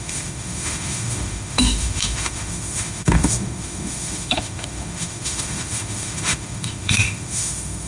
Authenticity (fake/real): fake